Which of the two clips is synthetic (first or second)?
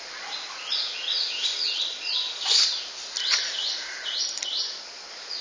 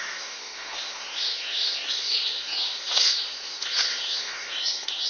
second